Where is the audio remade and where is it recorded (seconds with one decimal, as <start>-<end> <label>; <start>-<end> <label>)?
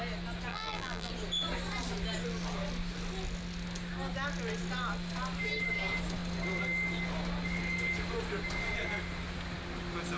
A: 0.0-0.5 recorded; 0.5-1.1 remade; 1.1-10.2 recorded